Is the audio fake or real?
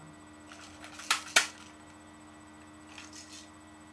real